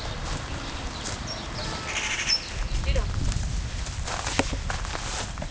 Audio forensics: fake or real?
real